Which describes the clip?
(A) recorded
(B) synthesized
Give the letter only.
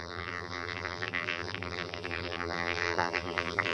B